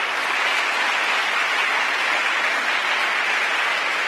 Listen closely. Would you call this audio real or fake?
real